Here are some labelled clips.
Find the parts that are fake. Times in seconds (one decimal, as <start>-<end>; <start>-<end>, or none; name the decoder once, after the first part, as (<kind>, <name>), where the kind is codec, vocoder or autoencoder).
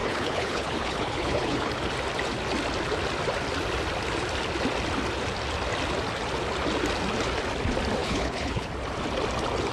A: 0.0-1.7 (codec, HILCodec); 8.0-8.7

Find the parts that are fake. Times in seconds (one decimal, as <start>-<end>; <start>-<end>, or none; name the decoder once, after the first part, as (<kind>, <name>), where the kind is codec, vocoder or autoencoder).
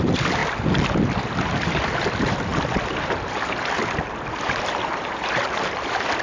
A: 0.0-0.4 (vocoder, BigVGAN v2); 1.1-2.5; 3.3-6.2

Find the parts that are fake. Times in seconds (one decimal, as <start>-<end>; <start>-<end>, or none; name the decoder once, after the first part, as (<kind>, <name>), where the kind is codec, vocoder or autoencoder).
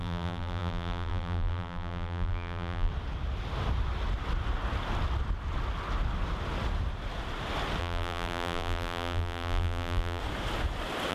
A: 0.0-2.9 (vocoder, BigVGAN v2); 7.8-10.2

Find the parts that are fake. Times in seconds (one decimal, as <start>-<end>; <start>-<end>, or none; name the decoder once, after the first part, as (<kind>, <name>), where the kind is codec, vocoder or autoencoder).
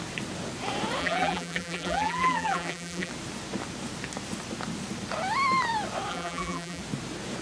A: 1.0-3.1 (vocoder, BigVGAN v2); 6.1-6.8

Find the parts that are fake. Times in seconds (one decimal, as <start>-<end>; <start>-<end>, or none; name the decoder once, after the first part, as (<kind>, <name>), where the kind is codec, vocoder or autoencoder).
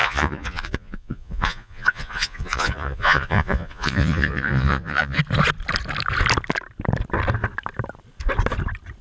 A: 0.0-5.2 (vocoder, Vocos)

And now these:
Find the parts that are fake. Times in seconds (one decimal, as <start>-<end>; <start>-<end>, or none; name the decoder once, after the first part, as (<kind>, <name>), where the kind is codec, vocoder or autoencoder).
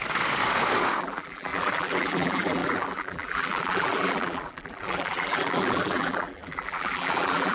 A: 1.0-7.5 (vocoder, BigVGAN v2)